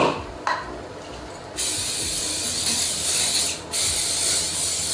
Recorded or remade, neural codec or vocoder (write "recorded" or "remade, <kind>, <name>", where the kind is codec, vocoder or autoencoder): recorded